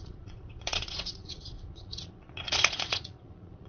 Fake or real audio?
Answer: fake